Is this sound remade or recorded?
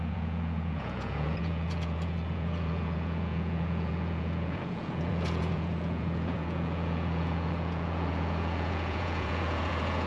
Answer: remade